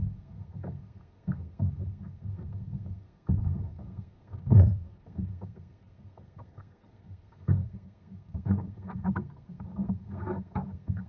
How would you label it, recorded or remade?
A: remade